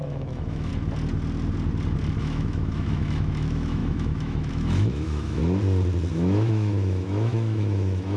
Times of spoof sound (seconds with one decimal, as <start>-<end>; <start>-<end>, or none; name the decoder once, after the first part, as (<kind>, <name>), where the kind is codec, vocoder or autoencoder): 0.0-0.7 (autoencoder, DAC-VAE); 2.2-5.4; 6.1-8.2